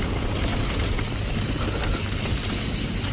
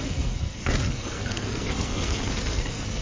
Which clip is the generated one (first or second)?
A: second